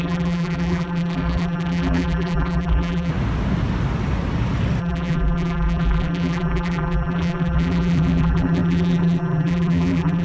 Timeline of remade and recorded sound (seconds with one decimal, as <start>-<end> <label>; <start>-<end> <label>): 0.0-3.1 remade; 3.1-4.8 recorded; 4.8-10.2 remade

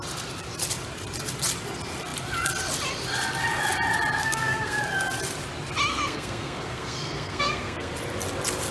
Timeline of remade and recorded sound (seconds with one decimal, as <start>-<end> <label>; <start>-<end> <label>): 0.0-4.2 recorded; 4.2-4.8 remade; 4.8-5.9 recorded; 5.9-7.9 remade; 7.9-8.7 recorded

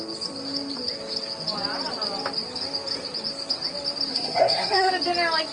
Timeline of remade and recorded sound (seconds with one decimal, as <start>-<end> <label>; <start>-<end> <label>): 0.0-4.1 recorded; 4.1-4.9 remade; 4.9-5.5 recorded

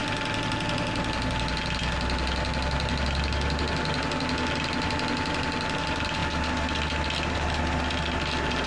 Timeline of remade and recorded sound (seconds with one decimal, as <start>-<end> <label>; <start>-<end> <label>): 0.0-8.7 recorded

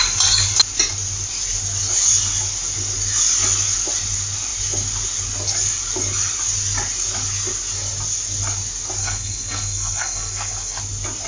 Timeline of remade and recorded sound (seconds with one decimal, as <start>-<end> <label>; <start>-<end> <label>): 0.0-9.0 recorded; 9.0-10.8 remade; 10.8-11.3 recorded

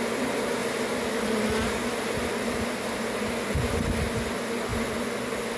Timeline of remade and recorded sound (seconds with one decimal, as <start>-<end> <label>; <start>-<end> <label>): 0.0-5.6 recorded